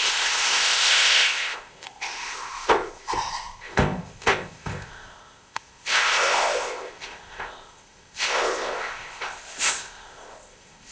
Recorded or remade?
remade